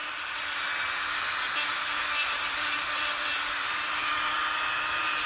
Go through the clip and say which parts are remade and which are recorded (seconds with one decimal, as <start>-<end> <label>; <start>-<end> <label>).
0.0-0.7 remade; 0.7-1.7 recorded; 1.7-5.3 remade